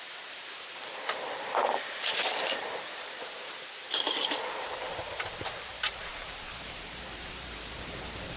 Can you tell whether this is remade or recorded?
remade